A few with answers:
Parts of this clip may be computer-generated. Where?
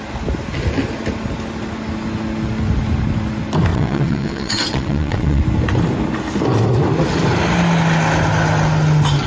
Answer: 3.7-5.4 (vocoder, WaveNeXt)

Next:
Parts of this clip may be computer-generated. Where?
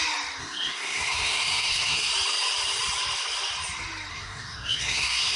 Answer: 0.4-2.1 (codec, SNAC); 4.1-5.4